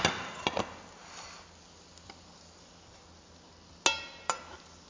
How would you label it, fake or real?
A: real